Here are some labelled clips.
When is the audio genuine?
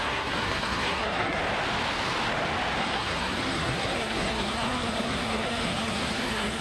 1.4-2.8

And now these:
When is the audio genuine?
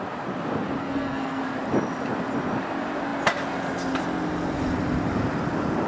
0.0-0.8; 1.4-5.9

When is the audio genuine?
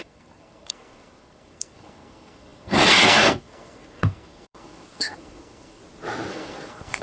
5.8-6.3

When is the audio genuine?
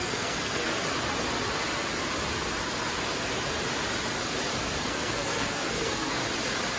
0.7-4.8; 6.2-6.8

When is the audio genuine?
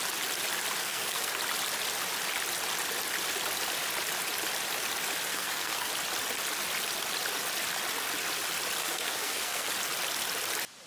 0.0-0.8; 1.3-5.3; 5.9-8.8; 9.7-10.9